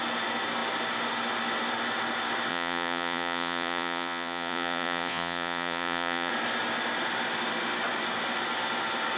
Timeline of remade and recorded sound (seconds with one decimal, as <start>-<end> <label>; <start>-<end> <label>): 0.0-2.5 recorded; 2.5-6.3 remade; 6.3-9.2 recorded